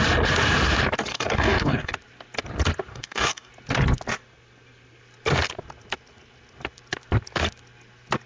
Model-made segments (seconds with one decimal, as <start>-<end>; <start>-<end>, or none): 1.1-1.9; 2.9-3.5